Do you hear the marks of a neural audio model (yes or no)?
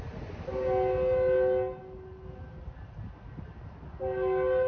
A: no